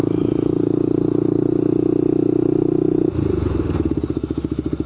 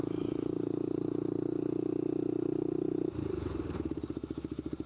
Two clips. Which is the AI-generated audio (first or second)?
second